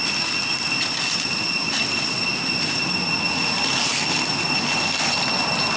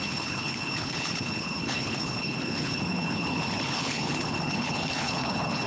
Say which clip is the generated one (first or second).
second